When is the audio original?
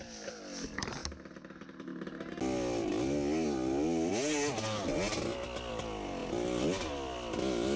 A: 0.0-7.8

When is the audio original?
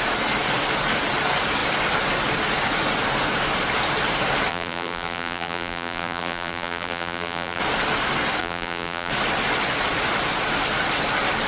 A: 0.0-4.5; 7.6-8.4; 9.1-11.5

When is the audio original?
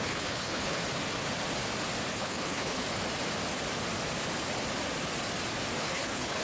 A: 0.8-2.1; 2.8-5.8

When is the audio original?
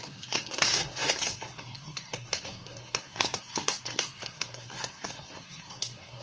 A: none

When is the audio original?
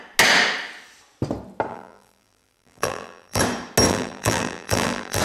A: 0.0-1.7; 3.4-3.9